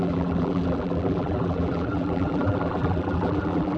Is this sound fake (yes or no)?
yes